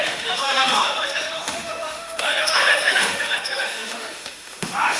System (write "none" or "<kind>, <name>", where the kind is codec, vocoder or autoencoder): autoencoder, DAC-VAE